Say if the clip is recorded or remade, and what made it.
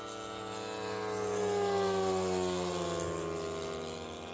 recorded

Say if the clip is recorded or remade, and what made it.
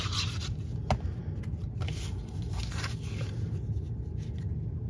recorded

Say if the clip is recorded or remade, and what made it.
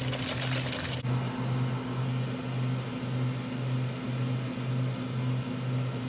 recorded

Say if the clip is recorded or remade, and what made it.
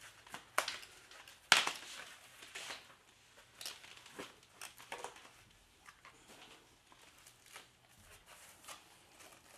recorded